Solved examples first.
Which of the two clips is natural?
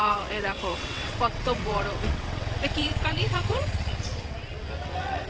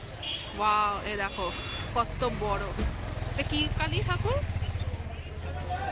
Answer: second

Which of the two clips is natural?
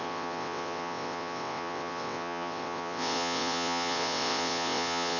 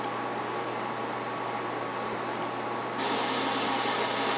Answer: second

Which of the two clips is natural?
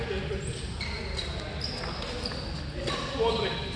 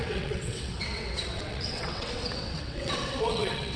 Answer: first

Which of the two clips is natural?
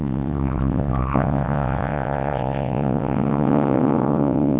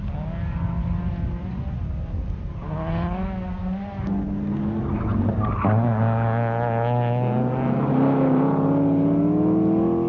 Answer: second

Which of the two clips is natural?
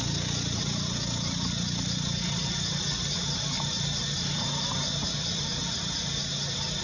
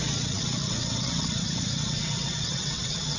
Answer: first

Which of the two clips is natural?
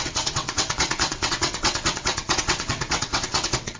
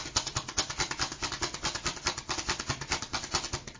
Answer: second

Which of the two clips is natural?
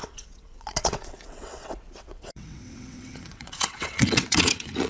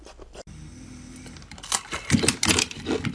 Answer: second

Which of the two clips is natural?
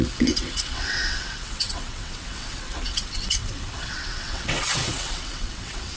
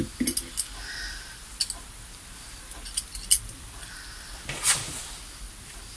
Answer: second